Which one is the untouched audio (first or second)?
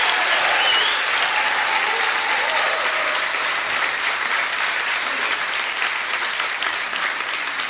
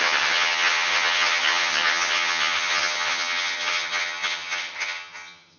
first